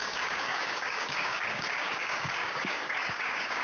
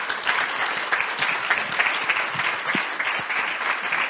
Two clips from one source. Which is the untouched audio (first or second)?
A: second